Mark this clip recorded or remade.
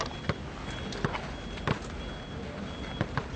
recorded